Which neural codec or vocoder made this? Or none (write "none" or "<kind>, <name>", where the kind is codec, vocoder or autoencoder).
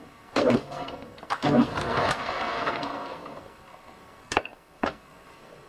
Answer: codec, SNAC